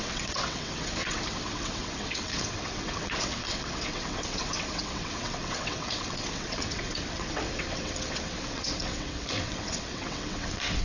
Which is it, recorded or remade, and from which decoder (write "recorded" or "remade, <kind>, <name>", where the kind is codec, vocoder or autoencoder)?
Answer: remade, vocoder, WaveNeXt